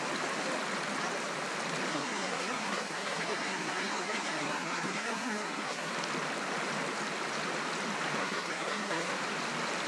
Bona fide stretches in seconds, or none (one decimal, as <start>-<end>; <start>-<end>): 0.0-1.9; 5.9-8.2; 9.1-9.9